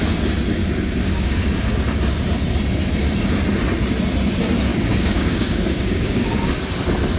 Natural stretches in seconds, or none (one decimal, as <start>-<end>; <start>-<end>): 0.0-0.6; 1.5-4.7; 6.5-7.2